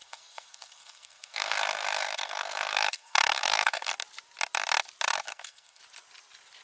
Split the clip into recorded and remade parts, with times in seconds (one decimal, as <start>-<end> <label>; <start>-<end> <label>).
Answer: 0.0-3.9 remade; 3.9-5.1 recorded; 5.1-5.8 remade; 5.8-6.6 recorded